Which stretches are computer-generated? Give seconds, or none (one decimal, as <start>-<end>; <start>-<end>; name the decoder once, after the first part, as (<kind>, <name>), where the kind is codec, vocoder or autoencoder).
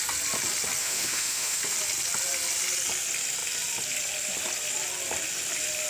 0.8-1.6 (autoencoder, DAC-VAE)